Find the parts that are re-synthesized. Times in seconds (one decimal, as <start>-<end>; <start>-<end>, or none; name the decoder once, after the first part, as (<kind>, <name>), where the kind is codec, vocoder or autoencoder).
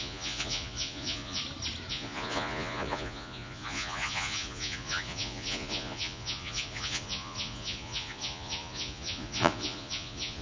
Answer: 0.0-1.4 (vocoder, Vocos); 1.9-10.4